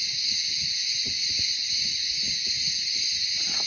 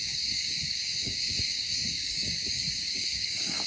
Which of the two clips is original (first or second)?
first